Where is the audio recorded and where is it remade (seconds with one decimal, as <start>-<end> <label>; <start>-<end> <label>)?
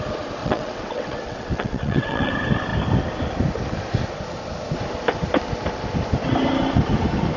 0.0-0.4 recorded; 0.4-2.3 remade; 2.3-7.4 recorded